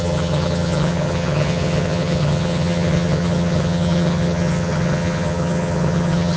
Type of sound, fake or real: fake